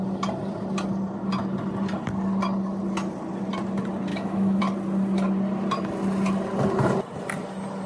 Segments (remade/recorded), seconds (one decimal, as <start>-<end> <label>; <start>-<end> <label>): 0.0-4.1 recorded; 4.1-4.6 remade; 4.6-7.9 recorded